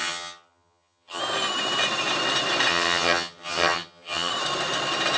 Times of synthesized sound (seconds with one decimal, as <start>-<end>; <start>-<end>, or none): 0.0-1.2; 2.7-4.3